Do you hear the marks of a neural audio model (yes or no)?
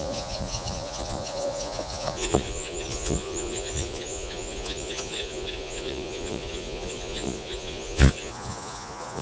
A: yes